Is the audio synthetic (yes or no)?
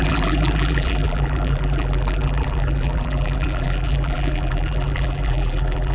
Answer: yes